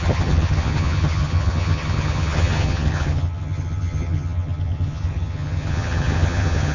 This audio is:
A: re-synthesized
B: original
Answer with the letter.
A